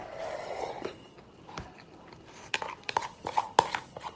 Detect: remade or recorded recorded